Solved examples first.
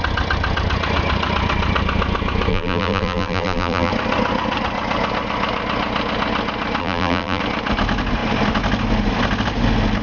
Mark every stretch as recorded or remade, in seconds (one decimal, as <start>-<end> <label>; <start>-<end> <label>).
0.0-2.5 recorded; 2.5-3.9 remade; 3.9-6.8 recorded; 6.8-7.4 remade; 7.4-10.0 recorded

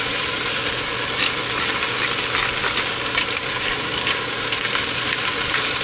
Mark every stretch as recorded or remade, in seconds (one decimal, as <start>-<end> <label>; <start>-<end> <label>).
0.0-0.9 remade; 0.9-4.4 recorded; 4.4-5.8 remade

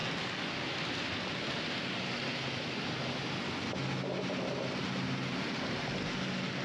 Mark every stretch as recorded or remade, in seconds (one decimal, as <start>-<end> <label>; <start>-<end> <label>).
0.0-6.6 recorded